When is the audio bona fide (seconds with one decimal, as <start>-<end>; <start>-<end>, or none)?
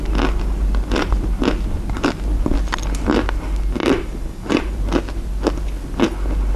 0.0-3.8; 4.8-6.6